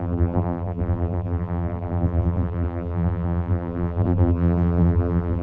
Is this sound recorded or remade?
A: remade